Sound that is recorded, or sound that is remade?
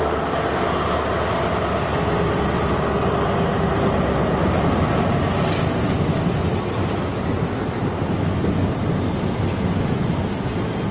recorded